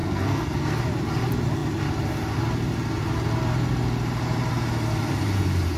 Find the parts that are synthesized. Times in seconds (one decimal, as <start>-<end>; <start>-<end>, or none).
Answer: 0.0-0.8